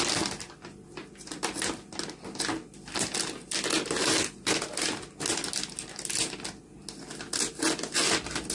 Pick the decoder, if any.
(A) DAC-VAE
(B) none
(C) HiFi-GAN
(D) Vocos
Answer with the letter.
B